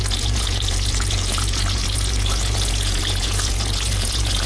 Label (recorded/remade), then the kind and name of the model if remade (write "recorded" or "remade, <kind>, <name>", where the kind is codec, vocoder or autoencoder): remade, vocoder, Vocos